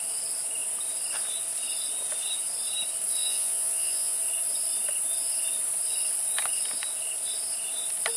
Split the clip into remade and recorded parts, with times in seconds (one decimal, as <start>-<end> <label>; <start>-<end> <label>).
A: 0.0-3.2 recorded; 3.2-4.2 remade; 4.2-8.2 recorded